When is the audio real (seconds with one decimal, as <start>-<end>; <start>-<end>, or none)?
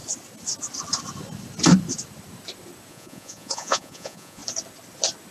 0.0-2.9; 4.4-5.3